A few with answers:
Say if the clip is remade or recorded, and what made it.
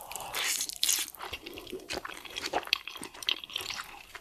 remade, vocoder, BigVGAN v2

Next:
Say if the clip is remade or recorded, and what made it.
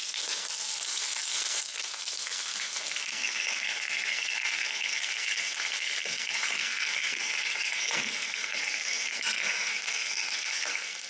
remade, codec, SNAC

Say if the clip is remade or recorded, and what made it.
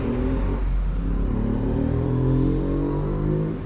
recorded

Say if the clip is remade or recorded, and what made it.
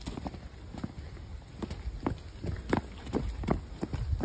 recorded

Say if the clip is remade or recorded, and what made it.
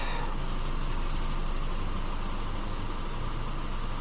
recorded